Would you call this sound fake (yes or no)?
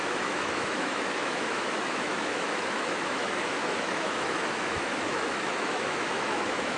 yes